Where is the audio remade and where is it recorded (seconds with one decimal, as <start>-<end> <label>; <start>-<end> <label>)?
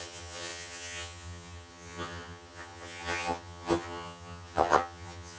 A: 0.0-5.4 remade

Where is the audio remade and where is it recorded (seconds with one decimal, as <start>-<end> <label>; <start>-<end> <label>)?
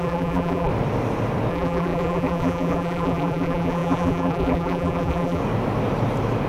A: 0.0-0.7 remade; 0.7-1.5 recorded; 1.5-5.4 remade; 5.4-6.5 recorded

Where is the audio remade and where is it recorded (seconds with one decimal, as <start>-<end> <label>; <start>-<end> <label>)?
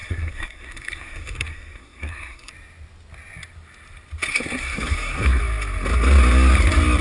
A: 0.0-2.5 remade; 2.5-4.3 recorded; 4.3-5.4 remade; 5.4-7.0 recorded